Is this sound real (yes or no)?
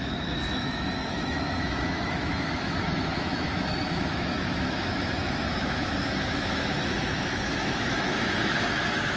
no